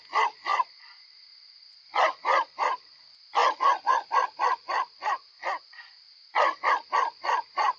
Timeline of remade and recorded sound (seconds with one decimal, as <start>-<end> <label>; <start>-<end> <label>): 0.0-0.5 recorded; 0.5-1.1 remade; 1.1-3.4 recorded; 3.4-6.7 remade; 6.7-7.8 recorded